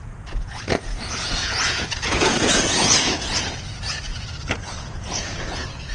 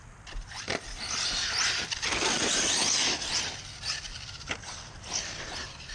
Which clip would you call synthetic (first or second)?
first